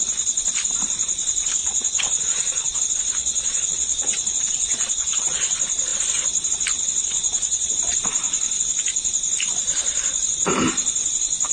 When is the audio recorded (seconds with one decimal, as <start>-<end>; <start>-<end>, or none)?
0.0-1.6; 2.8-3.2; 5.5-7.0; 7.7-11.5